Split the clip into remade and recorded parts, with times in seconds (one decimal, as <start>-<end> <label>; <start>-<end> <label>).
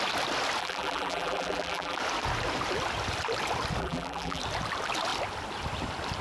0.0-0.6 recorded; 0.6-2.0 remade; 2.0-3.8 recorded; 3.8-4.4 remade; 4.4-6.2 recorded